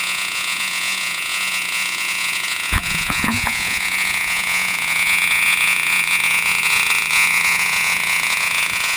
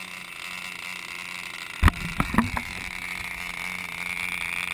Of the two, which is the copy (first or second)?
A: first